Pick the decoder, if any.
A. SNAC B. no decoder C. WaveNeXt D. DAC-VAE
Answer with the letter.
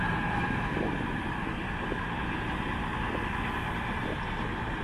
B